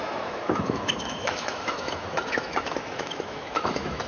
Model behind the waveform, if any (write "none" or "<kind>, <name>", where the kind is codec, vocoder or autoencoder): autoencoder, DAC-VAE